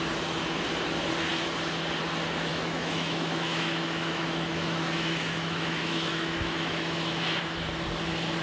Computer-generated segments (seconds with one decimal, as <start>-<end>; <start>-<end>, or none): 2.5-7.4